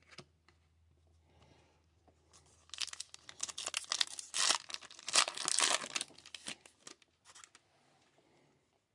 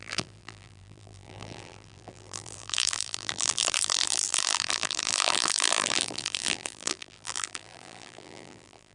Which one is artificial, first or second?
second